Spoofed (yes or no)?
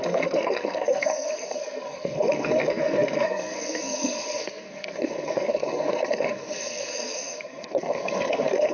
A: yes